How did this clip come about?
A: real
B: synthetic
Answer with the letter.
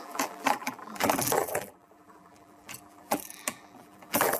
B